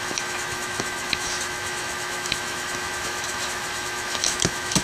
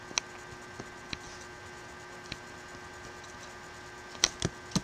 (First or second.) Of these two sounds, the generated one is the first